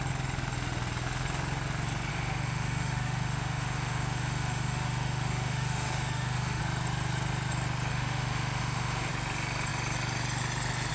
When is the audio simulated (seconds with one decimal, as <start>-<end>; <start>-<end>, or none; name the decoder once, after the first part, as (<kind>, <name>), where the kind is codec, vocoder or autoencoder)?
2.1-6.6 (autoencoder, DAC-VAE); 7.9-9.1